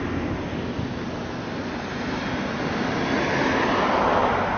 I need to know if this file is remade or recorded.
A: recorded